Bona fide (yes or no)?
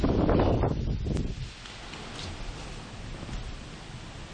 yes